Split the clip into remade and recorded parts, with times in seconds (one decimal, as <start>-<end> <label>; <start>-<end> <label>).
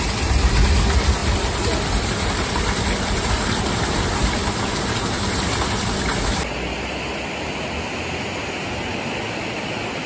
0.0-1.2 recorded; 1.2-3.3 remade; 3.3-8.9 recorded; 8.9-9.7 remade; 9.7-10.1 recorded